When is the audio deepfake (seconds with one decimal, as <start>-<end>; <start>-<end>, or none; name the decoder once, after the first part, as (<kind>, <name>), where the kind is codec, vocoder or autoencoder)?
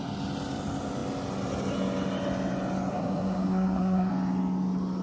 2.9-4.1 (codec, SNAC)